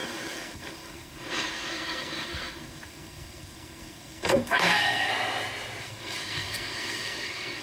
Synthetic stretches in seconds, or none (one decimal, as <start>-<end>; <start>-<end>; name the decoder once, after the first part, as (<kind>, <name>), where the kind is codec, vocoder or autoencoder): 0.0-5.1 (codec, SNAC); 5.8-7.6